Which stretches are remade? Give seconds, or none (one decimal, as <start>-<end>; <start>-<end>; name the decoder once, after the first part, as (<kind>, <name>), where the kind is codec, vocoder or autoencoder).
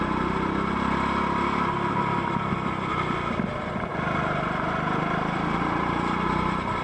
none